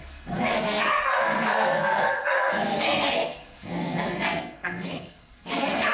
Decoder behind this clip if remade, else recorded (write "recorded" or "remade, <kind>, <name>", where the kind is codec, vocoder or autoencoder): remade, codec, SNAC